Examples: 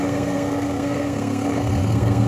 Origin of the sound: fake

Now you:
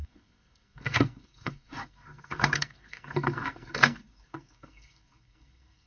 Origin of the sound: fake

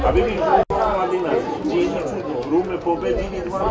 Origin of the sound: real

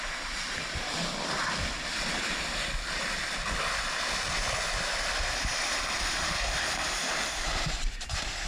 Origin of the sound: fake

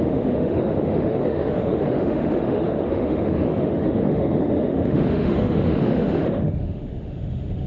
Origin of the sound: fake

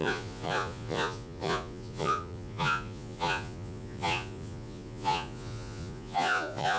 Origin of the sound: fake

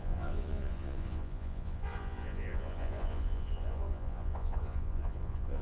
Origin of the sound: fake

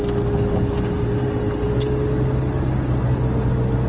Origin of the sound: real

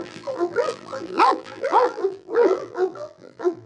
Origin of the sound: fake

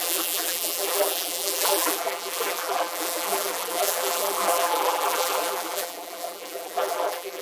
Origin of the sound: fake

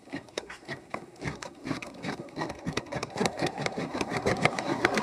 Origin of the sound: fake